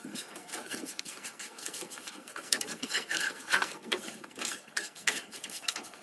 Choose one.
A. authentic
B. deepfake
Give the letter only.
B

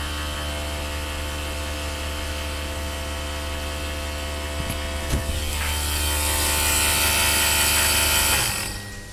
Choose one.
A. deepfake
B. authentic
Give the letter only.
B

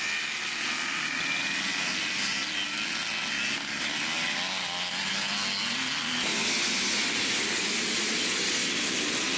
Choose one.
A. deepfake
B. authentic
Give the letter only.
B